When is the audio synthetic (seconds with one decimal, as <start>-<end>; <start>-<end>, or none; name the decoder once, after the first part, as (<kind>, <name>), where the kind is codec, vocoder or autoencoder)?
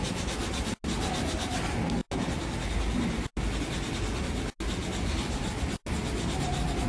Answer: none